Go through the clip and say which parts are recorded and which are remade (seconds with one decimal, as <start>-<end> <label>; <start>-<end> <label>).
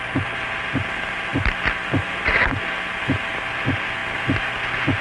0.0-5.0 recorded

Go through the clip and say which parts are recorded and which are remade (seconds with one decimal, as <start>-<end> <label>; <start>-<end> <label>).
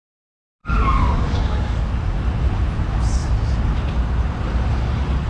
0.0-0.6 recorded; 0.6-1.9 remade; 1.9-5.3 recorded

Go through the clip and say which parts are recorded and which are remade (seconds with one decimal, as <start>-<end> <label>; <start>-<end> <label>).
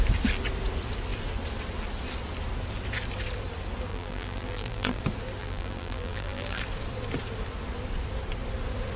0.0-3.9 recorded; 3.9-5.0 remade; 5.0-5.4 recorded; 5.4-6.6 remade; 6.6-9.0 recorded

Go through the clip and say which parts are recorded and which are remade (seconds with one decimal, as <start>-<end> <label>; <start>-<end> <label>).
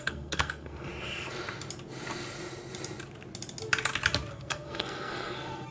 0.0-0.9 remade; 0.9-4.3 recorded; 4.3-5.7 remade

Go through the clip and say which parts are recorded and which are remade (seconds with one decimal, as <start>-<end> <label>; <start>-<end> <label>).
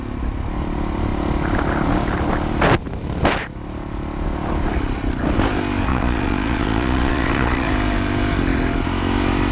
0.0-5.9 recorded; 5.9-7.7 remade; 7.7-9.5 recorded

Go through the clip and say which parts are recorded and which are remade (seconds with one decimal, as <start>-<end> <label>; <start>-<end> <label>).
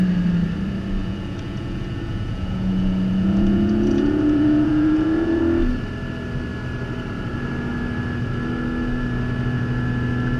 0.0-1.0 recorded; 1.0-5.4 remade; 5.4-10.4 recorded